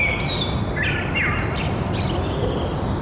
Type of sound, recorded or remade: recorded